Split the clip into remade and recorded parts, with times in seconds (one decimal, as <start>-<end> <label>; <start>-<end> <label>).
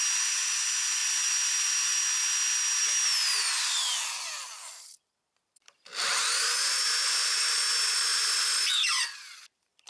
0.0-1.0 recorded; 1.0-2.0 remade; 2.0-3.2 recorded; 3.2-7.4 remade; 7.4-8.1 recorded; 8.1-9.9 remade